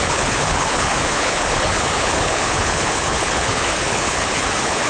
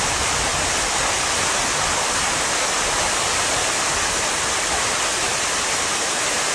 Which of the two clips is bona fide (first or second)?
second